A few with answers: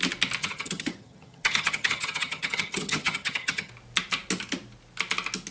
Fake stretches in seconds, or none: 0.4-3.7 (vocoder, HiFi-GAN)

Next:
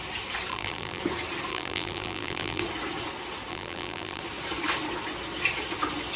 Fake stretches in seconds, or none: 0.5-1.0 (vocoder, BigVGAN v2); 1.5-2.6; 3.5-4.2

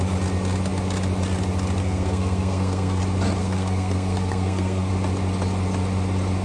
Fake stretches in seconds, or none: 1.8-3.0 (codec, SNAC); 3.4-4.9

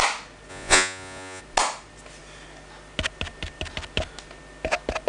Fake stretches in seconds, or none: 0.5-1.4 (vocoder, Vocos)

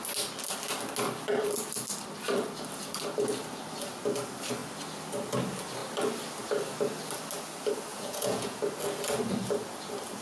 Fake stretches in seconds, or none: 7.9-8.6 (vocoder, Vocos)

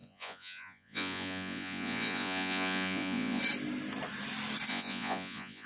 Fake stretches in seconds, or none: 0.0-3.4 (vocoder, Vocos); 4.7-5.7

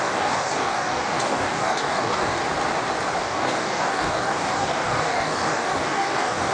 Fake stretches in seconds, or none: 0.0-2.4 (codec, DAC); 3.2-6.5

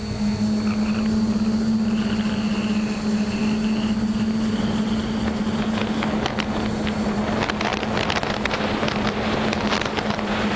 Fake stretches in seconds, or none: none